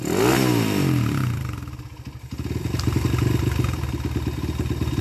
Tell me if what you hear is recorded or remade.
recorded